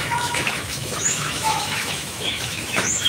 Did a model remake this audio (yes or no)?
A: yes